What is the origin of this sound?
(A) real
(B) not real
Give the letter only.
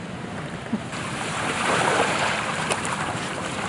B